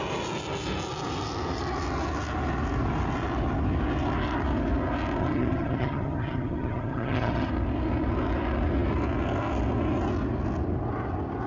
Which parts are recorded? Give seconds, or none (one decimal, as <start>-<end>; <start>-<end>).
0.0-5.2; 7.5-11.5